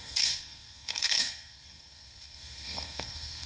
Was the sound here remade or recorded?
remade